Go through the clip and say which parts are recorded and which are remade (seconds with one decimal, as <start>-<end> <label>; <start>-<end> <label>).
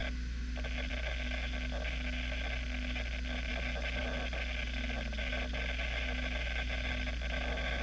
0.0-7.8 recorded